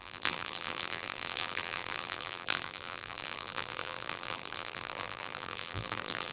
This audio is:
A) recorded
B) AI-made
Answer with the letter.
B